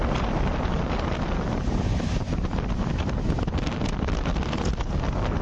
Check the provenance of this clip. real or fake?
real